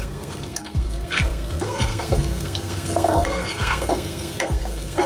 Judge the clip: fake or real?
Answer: fake